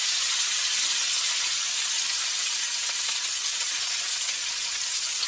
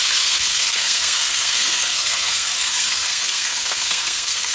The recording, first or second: first